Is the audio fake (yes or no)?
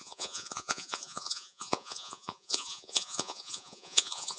yes